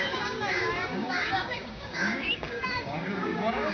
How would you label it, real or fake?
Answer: fake